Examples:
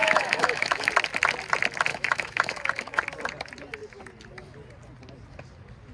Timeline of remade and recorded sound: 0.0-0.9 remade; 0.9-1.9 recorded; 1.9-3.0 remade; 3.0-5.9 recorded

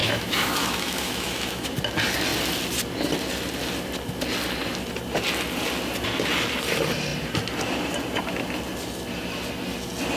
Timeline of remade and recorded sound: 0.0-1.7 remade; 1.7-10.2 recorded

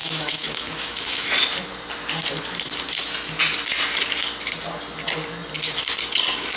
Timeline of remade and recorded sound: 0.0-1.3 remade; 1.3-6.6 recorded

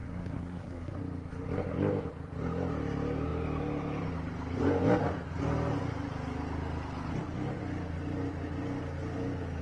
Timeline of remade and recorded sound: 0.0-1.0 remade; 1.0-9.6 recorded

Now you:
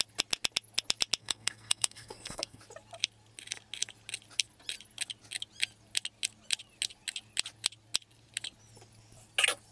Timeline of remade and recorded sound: 0.0-1.2 recorded; 1.2-2.6 remade; 2.6-9.7 recorded

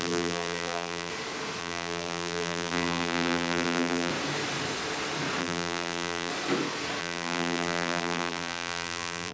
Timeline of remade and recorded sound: 0.0-1.1 remade; 1.1-1.6 recorded; 1.6-4.1 remade; 4.1-5.4 recorded; 5.4-6.3 remade; 6.3-7.0 recorded; 7.0-9.3 remade